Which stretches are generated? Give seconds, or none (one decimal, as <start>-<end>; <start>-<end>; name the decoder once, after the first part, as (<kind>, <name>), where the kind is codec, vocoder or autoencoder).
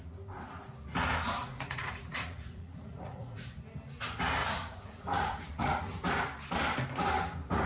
1.4-3.7 (vocoder, Vocos); 4.4-5.8